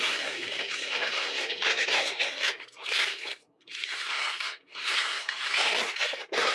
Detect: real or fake fake